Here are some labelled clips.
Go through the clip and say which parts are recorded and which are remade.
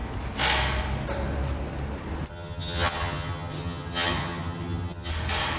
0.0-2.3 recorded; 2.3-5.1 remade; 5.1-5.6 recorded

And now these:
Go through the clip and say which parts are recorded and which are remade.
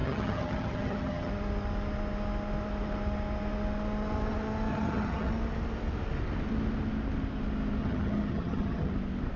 0.0-1.3 remade; 1.3-4.7 recorded; 4.7-5.3 remade; 5.3-7.8 recorded; 7.8-8.9 remade; 8.9-9.4 recorded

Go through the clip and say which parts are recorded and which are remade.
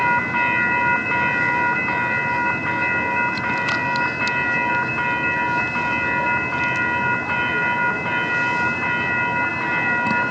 0.0-10.3 recorded